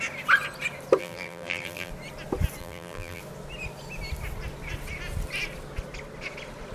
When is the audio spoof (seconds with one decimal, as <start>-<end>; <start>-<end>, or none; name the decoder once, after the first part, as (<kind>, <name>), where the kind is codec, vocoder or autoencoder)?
1.0-1.9 (vocoder, BigVGAN v2); 2.6-3.2